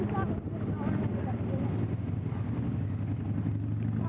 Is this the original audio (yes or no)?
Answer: yes